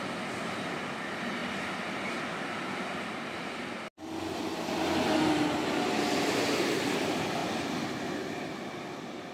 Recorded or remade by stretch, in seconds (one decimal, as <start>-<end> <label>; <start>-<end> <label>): 0.0-9.3 recorded